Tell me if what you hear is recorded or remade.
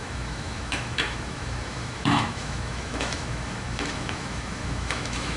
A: remade